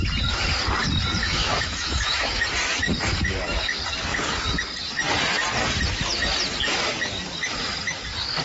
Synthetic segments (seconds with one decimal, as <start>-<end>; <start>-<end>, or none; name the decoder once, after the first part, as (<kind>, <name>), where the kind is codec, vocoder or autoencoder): 1.2-2.4 (autoencoder, DAC-VAE)